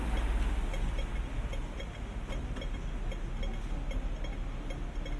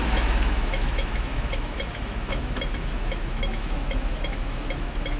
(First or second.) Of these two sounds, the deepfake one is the second